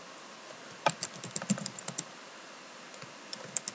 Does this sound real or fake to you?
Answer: real